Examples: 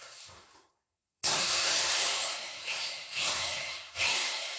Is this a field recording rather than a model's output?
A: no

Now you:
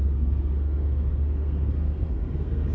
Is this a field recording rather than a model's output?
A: no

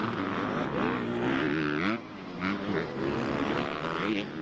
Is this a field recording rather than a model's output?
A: yes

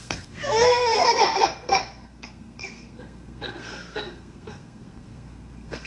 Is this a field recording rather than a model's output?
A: no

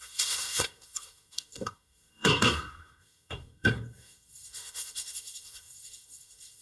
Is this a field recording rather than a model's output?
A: no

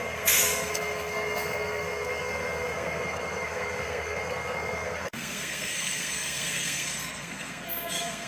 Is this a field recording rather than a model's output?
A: no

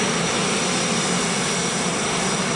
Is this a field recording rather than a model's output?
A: yes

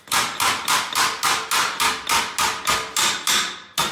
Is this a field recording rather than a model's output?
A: yes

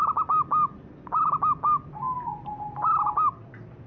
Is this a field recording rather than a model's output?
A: yes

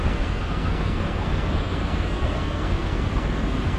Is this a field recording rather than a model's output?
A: no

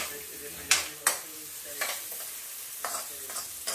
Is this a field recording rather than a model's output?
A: yes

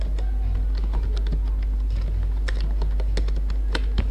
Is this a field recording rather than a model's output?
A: yes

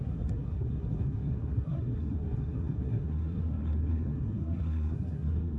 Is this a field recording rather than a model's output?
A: no